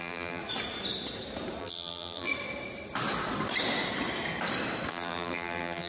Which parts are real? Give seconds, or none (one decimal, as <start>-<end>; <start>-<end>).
0.4-1.6; 2.3-4.9